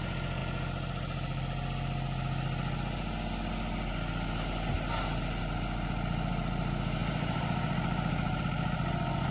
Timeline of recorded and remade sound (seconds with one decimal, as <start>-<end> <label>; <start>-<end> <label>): 0.0-7.0 recorded; 7.0-8.4 remade; 8.4-9.3 recorded